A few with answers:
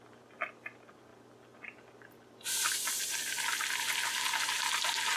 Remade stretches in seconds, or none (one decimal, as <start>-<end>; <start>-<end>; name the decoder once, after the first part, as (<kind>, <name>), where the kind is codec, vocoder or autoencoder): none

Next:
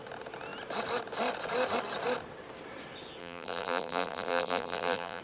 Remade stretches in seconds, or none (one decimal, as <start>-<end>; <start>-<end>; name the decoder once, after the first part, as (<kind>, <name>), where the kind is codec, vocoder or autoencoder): 3.2-5.2 (vocoder, BigVGAN v2)

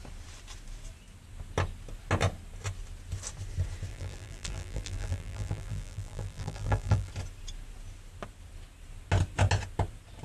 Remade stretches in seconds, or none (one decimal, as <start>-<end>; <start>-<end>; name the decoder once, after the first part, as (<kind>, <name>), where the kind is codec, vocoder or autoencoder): 3.9-7.1 (vocoder, BigVGAN v2)

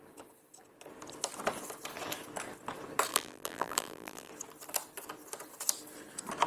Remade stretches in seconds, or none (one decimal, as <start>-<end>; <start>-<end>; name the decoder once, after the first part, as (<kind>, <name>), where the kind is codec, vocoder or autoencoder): 3.1-4.3 (vocoder, BigVGAN v2)